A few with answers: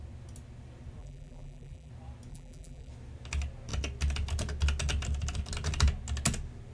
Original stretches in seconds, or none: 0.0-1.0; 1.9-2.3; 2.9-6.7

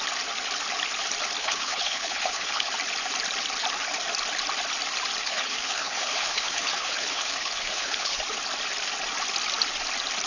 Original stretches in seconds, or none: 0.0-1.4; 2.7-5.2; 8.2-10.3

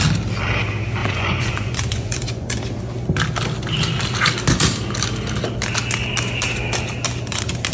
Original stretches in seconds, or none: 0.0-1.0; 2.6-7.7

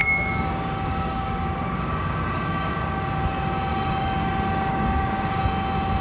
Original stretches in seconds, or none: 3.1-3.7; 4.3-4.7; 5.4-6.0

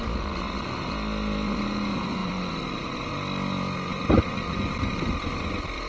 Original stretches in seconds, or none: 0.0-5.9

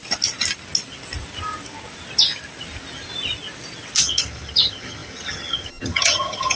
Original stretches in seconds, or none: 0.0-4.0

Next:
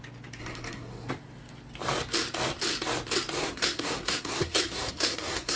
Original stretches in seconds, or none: 0.0-0.4; 1.1-3.4